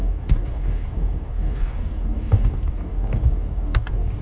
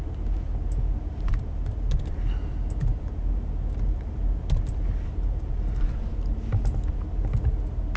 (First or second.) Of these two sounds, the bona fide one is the second